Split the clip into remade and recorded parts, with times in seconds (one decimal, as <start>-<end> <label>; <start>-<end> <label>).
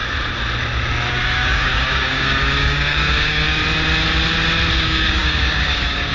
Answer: 0.0-1.1 recorded; 1.1-3.6 remade; 3.6-4.8 recorded; 4.8-6.1 remade